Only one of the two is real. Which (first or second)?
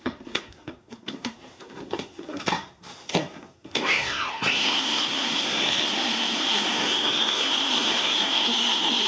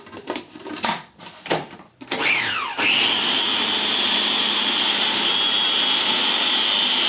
second